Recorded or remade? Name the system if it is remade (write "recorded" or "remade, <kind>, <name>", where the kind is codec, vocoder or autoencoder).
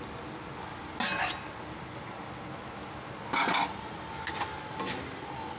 recorded